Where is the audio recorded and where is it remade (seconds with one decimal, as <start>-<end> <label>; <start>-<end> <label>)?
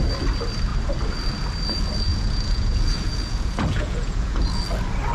0.0-2.1 recorded; 2.1-4.6 remade; 4.6-5.1 recorded